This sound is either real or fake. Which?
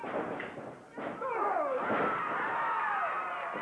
real